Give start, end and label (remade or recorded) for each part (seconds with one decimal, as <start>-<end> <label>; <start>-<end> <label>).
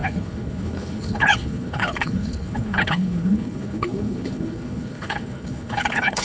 0.0-6.2 remade